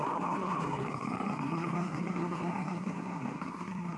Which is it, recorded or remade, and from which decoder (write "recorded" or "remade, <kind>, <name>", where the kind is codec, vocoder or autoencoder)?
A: remade, codec, SNAC